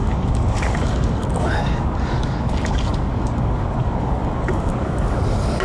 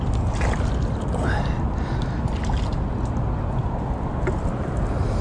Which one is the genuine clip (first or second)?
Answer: second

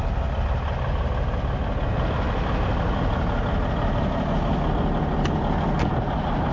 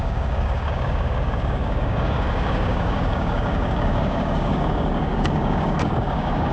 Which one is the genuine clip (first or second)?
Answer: first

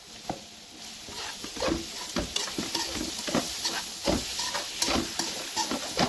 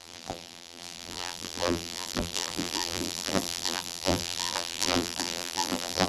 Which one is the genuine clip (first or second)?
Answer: first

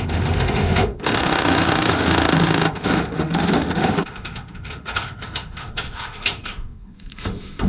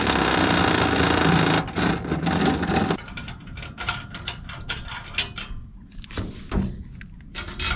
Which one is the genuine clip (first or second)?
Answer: second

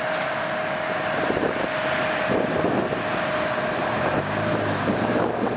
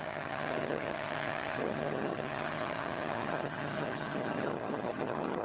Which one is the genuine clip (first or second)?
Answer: first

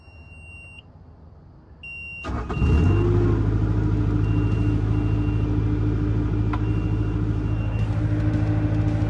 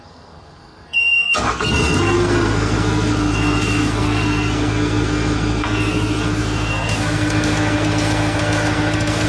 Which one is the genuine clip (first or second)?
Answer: first